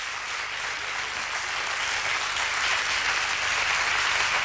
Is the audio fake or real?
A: real